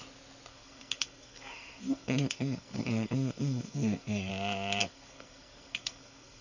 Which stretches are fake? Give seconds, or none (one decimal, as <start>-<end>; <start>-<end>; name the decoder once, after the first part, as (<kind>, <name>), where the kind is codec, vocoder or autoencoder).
0.5-4.3 (codec, SNAC); 4.8-6.4